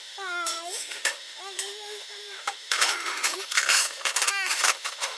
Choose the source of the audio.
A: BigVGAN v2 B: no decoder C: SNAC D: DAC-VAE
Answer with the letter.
D